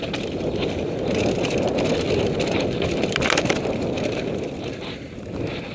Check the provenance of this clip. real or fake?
real